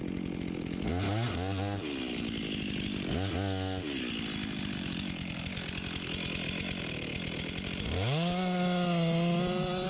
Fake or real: real